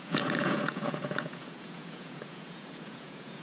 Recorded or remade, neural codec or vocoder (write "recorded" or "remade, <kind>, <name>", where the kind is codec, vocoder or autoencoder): remade, vocoder, Vocos